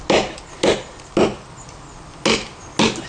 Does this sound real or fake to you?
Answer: real